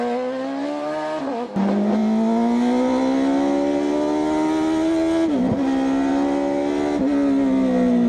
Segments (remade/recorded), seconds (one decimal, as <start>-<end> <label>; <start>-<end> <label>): 0.0-8.1 recorded